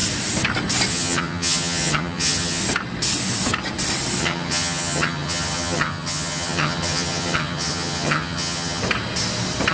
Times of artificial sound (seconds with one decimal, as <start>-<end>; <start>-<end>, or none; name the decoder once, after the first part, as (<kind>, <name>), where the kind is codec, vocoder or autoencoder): 0.9-2.6 (vocoder, HiFi-GAN); 4.2-8.8